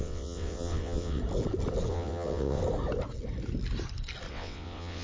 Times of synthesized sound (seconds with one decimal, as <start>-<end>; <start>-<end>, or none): 0.0-1.2; 1.9-2.6; 4.3-5.0